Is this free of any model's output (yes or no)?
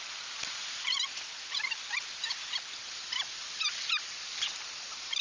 yes